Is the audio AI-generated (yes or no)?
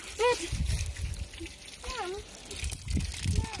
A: no